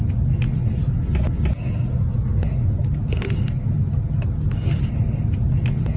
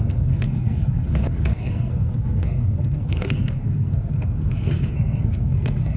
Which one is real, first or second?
first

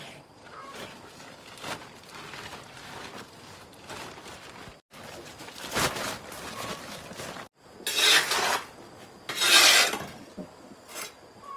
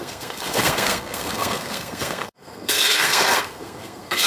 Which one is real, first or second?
first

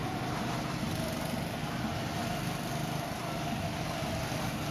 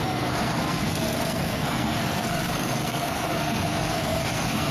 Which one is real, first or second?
first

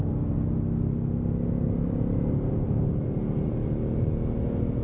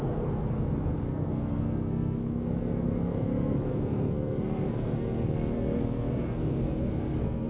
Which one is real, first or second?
first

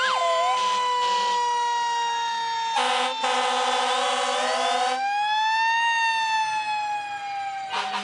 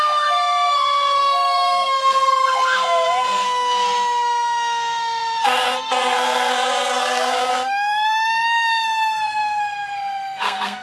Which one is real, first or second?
first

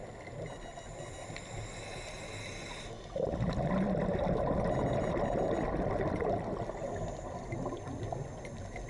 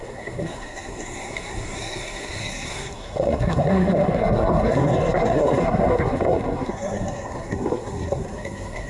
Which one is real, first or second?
first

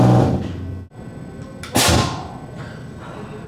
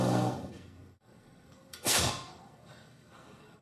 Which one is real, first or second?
first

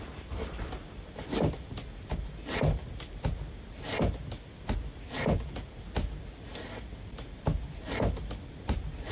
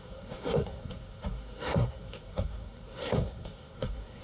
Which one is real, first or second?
first